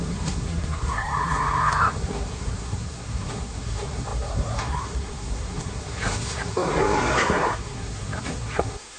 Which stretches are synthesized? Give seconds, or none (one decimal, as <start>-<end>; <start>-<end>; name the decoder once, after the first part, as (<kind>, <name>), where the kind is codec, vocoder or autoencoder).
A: 0.0-9.0 (codec, SNAC)